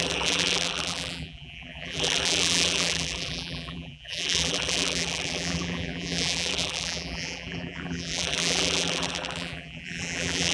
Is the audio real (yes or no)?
no